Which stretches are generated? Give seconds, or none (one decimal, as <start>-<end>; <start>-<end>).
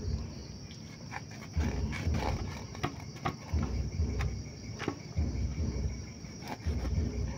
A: 0.0-0.4; 1.2-2.4; 3.4-7.4